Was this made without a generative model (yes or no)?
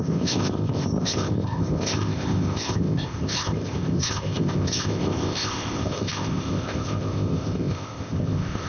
no